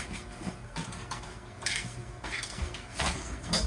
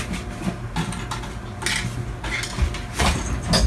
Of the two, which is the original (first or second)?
second